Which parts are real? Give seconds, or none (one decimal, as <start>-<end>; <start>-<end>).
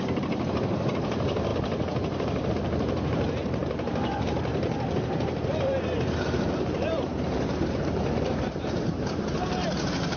4.5-5.0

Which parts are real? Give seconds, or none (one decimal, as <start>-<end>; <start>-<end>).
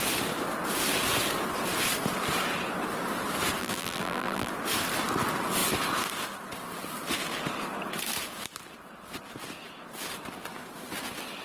0.0-3.6; 4.5-11.4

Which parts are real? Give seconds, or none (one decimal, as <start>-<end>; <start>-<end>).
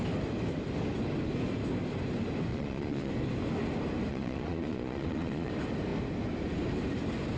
0.0-2.5; 3.1-4.1; 5.5-7.4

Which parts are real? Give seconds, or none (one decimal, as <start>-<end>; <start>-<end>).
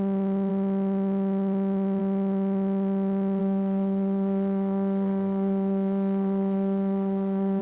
0.0-3.4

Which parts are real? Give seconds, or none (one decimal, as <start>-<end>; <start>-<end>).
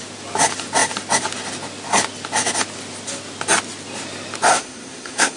0.0-4.5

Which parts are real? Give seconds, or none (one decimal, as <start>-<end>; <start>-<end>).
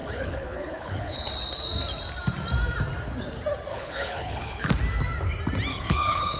1.3-3.7; 4.7-5.7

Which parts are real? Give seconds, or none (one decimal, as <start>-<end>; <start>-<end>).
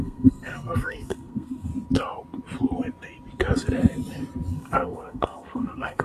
1.7-4.5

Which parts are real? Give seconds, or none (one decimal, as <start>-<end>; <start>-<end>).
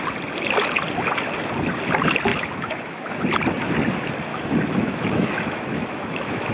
0.0-2.3; 3.1-4.3